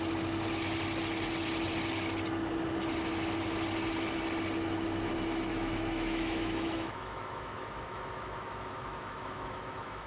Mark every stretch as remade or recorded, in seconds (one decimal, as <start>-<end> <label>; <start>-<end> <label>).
0.0-5.5 recorded; 5.5-10.1 remade